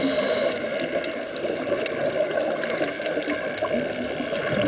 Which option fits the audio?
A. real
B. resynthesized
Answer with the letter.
A